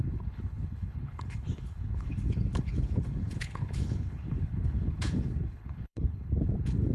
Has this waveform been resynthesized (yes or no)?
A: yes